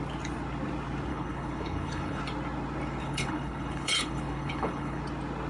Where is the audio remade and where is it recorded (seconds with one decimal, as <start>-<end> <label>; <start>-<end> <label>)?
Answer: 0.0-1.1 recorded; 1.1-2.2 remade; 2.2-3.0 recorded; 3.0-5.0 remade; 5.0-5.5 recorded